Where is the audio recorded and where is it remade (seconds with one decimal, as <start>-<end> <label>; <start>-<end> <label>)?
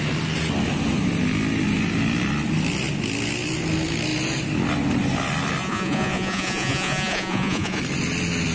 0.0-5.6 recorded; 5.6-7.8 remade; 7.8-8.5 recorded